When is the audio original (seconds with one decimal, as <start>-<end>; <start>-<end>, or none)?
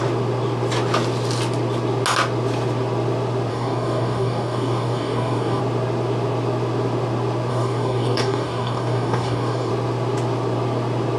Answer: 0.0-3.5; 5.6-7.5; 9.7-11.2